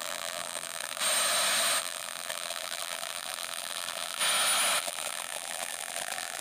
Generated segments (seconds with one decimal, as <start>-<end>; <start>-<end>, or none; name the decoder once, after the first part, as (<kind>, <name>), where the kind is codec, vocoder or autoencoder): 0.0-1.0 (vocoder, BigVGAN v2); 1.8-4.2; 4.8-6.4